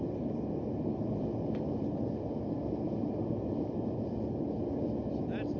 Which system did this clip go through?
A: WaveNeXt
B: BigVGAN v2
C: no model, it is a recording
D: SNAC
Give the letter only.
C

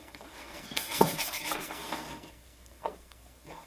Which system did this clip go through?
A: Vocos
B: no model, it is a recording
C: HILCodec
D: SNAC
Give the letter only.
D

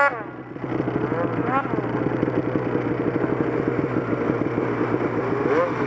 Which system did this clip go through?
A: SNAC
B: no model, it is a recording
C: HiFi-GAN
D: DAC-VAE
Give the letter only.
B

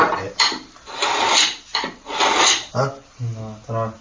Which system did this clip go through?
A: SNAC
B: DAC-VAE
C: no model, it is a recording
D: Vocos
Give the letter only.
C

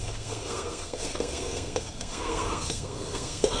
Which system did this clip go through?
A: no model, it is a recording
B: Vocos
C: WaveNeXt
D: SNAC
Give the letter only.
D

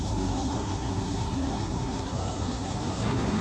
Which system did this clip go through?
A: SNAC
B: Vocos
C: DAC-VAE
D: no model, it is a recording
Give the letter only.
A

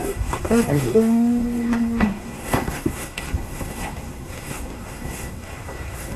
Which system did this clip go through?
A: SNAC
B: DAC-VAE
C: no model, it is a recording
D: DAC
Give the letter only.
A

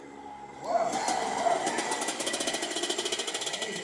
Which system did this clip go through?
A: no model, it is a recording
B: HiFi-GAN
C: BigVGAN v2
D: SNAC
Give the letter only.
A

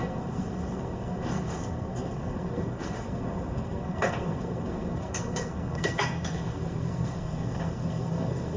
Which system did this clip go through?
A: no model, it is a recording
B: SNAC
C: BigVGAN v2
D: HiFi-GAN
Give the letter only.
B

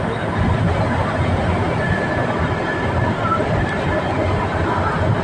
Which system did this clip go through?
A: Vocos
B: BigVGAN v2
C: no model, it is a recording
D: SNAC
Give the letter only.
C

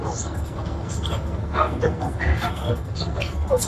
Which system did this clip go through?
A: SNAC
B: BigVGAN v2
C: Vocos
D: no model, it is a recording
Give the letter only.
A